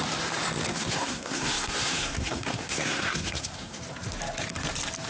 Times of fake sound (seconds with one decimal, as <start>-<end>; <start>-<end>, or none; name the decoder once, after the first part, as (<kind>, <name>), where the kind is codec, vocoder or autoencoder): 0.7-3.8 (codec, SNAC)